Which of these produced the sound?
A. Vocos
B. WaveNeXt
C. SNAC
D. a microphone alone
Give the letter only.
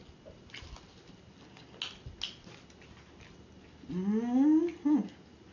D